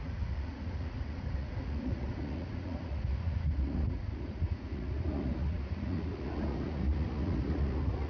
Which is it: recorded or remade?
remade